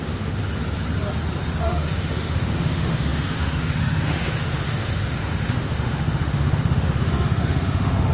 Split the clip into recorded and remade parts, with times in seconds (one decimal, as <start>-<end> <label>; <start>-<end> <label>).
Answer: 0.0-0.4 remade; 0.4-1.6 recorded; 1.6-8.1 remade